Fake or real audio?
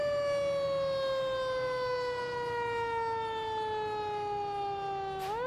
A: real